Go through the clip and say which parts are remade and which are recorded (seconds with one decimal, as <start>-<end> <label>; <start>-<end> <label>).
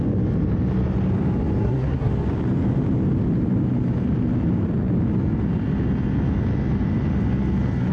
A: 0.0-1.6 recorded; 1.6-2.1 remade; 2.1-7.9 recorded